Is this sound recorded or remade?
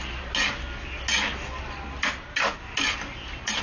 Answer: recorded